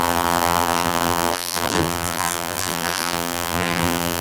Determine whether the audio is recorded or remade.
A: remade